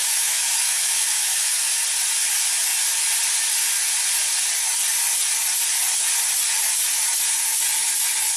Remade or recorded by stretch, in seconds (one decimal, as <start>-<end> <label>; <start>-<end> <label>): 0.0-1.8 remade; 1.8-8.4 recorded